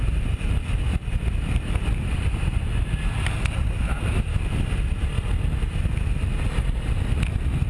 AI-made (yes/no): no